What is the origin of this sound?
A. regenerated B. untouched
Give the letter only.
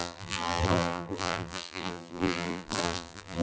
A